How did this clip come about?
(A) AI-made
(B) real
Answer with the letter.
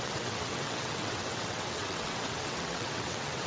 A